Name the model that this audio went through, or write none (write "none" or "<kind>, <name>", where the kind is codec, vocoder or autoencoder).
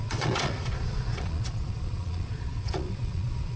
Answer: vocoder, Vocos